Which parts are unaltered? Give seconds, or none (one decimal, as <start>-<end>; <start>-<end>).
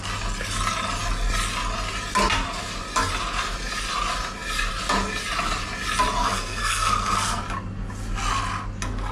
0.0-6.2; 7.4-9.1